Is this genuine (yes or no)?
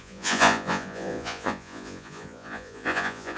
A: no